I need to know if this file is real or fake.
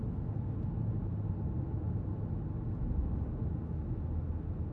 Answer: real